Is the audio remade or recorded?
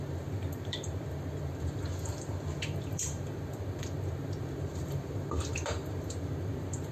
remade